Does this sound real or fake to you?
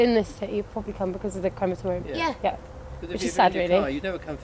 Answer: real